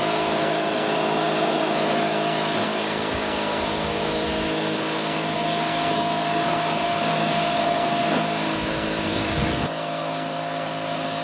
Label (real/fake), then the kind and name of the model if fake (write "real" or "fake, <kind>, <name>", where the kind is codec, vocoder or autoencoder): fake, codec, SNAC